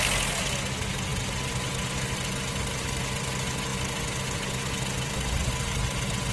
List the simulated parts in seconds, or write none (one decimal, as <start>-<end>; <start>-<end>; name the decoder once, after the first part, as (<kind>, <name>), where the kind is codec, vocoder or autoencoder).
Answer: none